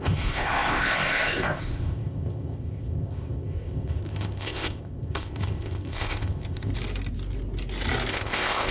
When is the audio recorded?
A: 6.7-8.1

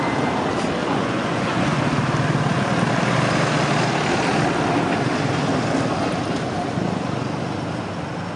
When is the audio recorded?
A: 0.0-0.8; 1.8-8.4

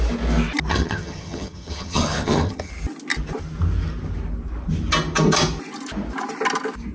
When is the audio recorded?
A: 0.0-0.7; 2.7-6.9

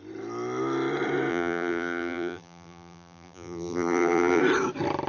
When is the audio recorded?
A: 0.0-1.3; 4.4-5.1

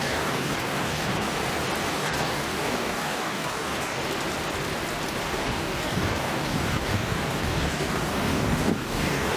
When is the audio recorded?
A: 1.4-1.9; 4.0-5.2

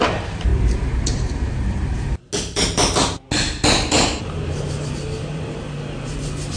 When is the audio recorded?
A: 0.0-0.5; 2.3-6.6